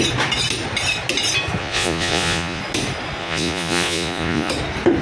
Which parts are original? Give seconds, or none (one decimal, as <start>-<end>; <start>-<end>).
0.0-1.6; 2.6-3.2; 4.5-5.0